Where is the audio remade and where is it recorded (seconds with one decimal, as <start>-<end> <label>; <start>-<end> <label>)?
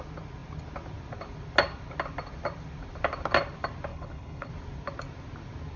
0.0-3.9 recorded; 3.9-4.5 remade; 4.5-5.8 recorded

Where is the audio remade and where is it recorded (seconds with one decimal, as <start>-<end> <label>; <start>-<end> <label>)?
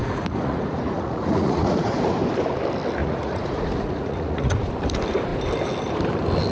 0.0-2.0 remade; 2.0-3.0 recorded; 3.0-4.7 remade; 4.7-6.5 recorded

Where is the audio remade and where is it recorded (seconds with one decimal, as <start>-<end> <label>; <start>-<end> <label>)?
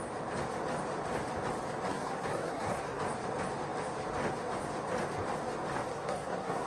0.0-1.9 recorded; 1.9-3.0 remade; 3.0-5.9 recorded; 5.9-6.7 remade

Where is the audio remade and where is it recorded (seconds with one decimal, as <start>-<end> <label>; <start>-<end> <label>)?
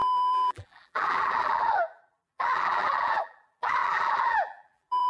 0.0-5.1 remade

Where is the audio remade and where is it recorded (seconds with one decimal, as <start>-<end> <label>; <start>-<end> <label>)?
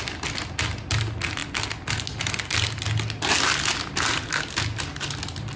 0.0-5.6 recorded